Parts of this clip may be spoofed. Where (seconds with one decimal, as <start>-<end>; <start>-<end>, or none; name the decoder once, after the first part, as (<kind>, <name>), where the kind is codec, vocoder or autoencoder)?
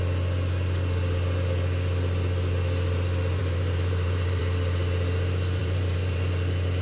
3.4-4.4 (vocoder, BigVGAN v2); 5.6-6.8